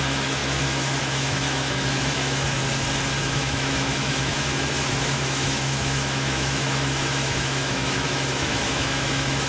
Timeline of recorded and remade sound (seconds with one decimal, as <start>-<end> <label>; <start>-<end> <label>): 0.0-2.6 remade; 2.6-3.2 recorded; 3.2-9.5 remade